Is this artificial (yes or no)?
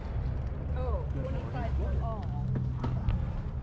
no